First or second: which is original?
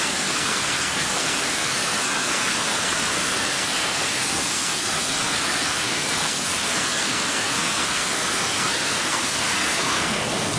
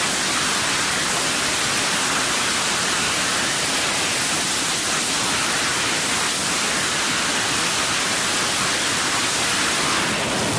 second